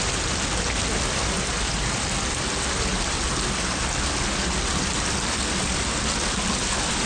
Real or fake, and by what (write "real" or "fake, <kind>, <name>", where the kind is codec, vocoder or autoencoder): real